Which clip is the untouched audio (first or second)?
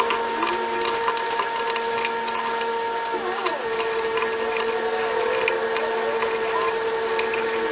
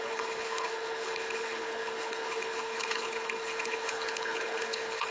first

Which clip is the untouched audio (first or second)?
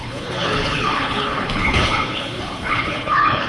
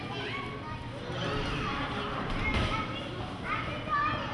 second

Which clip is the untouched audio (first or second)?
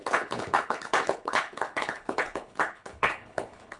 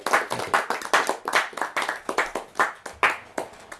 second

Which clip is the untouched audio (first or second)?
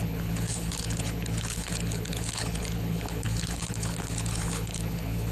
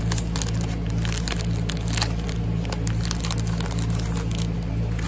second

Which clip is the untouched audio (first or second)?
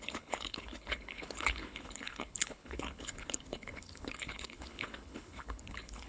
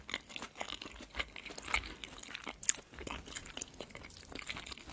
second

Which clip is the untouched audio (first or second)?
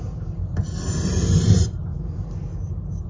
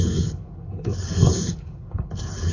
first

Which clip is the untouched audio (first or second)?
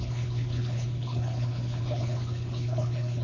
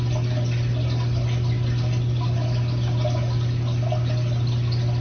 second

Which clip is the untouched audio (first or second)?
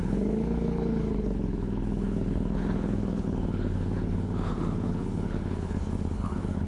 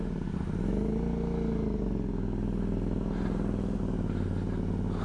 second